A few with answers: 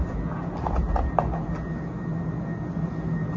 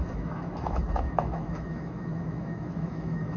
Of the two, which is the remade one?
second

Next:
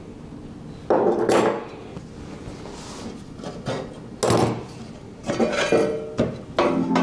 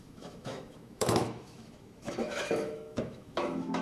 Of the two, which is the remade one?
second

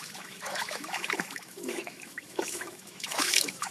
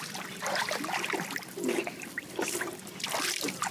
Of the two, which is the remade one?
first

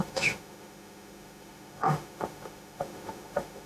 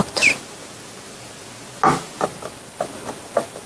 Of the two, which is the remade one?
first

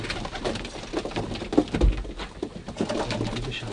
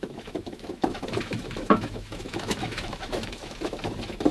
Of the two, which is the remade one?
second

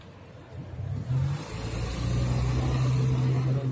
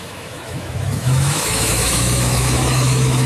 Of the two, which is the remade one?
second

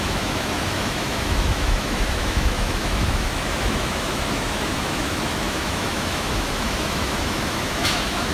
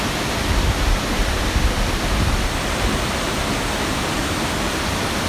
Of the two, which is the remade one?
first